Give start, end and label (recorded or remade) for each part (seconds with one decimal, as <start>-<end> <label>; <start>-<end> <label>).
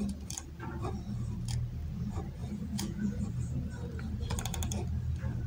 0.0-2.4 recorded; 2.4-3.2 remade; 3.2-5.5 recorded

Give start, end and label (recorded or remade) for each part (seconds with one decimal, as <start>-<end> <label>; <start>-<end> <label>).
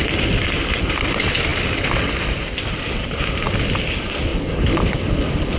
0.0-5.6 recorded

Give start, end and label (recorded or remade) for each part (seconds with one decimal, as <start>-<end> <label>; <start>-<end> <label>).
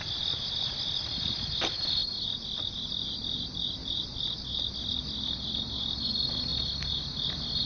0.0-7.7 recorded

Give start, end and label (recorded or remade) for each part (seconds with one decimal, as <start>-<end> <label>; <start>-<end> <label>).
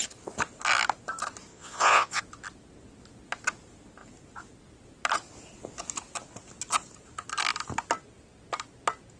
0.0-1.5 recorded; 1.5-2.2 remade; 2.2-9.2 recorded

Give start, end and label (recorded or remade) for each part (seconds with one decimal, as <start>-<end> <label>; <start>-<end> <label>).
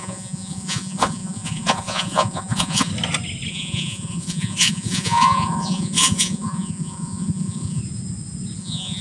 0.0-2.9 remade; 2.9-3.5 recorded; 3.5-7.8 remade; 7.8-8.6 recorded; 8.6-9.0 remade